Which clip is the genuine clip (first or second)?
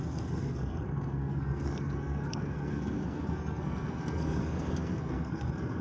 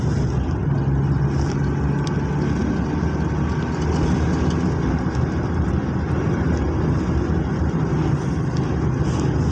second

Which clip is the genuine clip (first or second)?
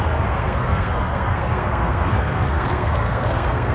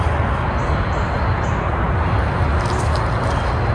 second